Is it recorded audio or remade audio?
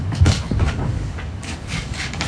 remade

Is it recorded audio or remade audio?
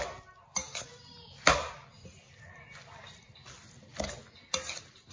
recorded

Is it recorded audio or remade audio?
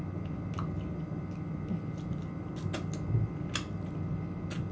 recorded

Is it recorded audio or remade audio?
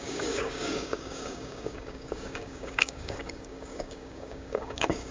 remade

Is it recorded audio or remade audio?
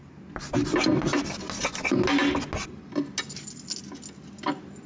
recorded